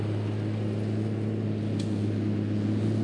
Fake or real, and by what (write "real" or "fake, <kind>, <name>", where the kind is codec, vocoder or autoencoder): real